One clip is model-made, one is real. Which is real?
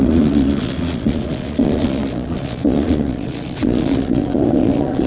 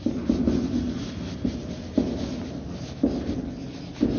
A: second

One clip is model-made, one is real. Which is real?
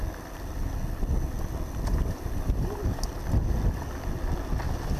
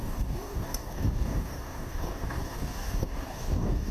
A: first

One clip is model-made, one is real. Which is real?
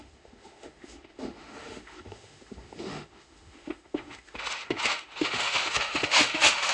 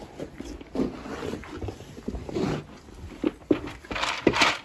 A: second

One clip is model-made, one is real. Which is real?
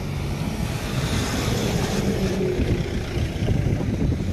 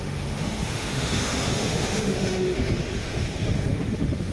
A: first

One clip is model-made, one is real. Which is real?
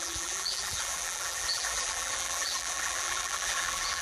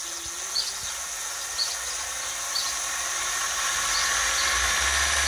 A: second